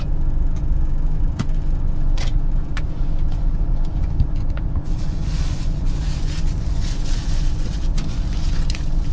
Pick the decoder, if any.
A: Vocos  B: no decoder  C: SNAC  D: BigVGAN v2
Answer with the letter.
A